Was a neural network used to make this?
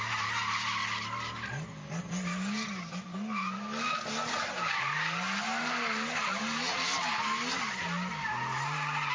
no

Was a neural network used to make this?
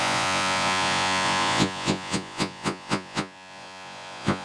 yes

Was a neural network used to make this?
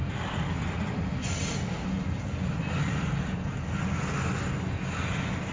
no